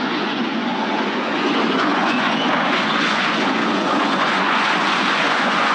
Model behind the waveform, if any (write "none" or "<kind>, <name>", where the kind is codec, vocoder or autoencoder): vocoder, Vocos